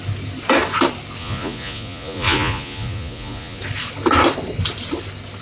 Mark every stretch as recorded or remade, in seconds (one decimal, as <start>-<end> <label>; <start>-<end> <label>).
0.0-1.2 recorded; 1.2-3.6 remade; 3.6-5.4 recorded